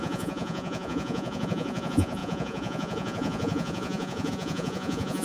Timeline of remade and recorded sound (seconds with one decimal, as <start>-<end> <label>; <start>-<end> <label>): 0.0-5.2 remade